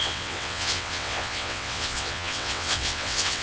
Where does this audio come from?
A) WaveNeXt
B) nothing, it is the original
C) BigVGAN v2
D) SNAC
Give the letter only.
A